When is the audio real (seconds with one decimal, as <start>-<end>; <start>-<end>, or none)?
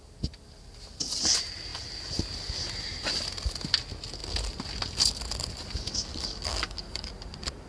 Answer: 0.0-6.1; 7.1-7.7